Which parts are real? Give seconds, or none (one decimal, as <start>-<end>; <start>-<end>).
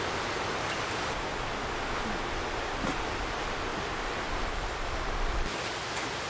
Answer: 0.0-3.7